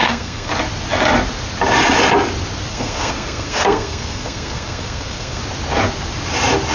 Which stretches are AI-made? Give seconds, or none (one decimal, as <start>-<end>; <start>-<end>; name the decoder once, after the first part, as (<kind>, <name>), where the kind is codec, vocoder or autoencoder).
0.0-0.5 (codec, SNAC); 2.7-5.4